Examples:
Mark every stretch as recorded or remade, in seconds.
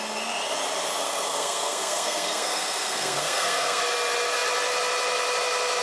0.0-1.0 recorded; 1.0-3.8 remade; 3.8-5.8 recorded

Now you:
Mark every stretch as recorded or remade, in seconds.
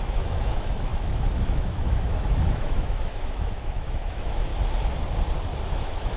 0.0-4.5 remade; 4.5-5.7 recorded; 5.7-6.2 remade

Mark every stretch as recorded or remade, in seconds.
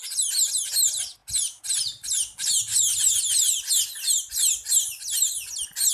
0.0-5.9 recorded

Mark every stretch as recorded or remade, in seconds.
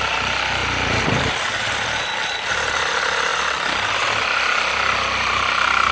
0.0-0.6 recorded; 0.6-2.5 remade; 2.5-5.9 recorded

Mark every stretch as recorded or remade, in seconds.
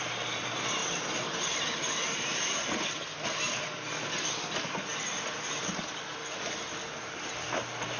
0.0-8.0 recorded